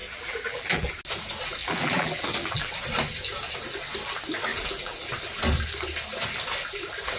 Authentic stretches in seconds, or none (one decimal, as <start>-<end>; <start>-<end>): 0.9-1.6; 2.7-4.5; 5.1-7.2